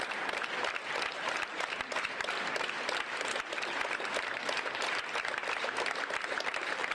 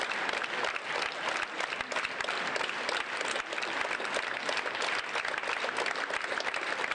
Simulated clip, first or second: first